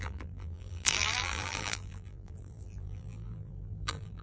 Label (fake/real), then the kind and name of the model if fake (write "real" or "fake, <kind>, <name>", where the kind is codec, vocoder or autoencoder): fake, vocoder, BigVGAN v2